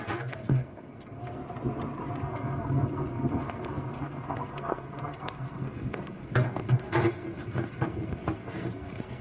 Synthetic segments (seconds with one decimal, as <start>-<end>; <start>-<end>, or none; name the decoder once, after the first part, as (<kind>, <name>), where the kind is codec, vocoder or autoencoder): 0.0-1.4 (codec, SNAC); 2.2-9.2